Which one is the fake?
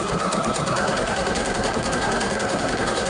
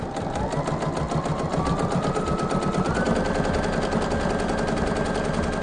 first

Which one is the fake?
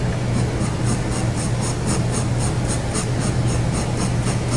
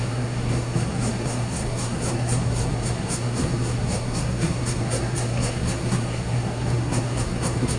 second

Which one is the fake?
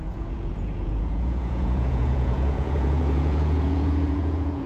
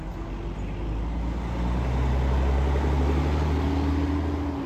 first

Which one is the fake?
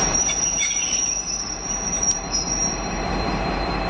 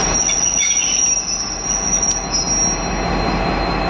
first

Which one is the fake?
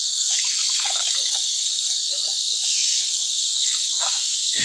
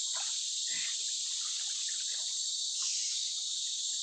first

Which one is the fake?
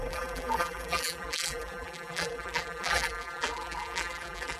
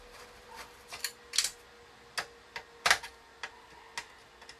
first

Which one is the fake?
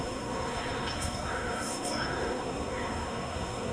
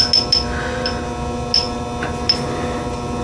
first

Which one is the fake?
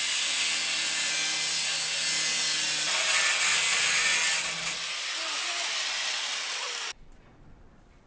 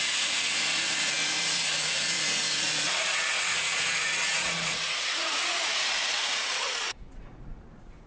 second